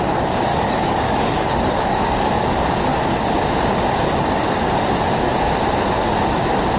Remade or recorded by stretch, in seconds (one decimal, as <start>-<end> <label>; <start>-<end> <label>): 0.0-0.5 recorded; 0.5-2.5 remade; 2.5-6.8 recorded